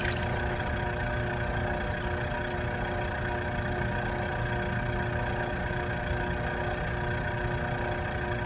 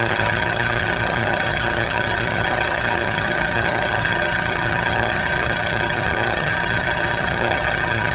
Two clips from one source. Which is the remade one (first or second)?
second